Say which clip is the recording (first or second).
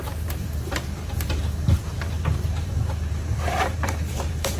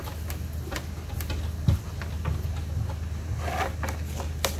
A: second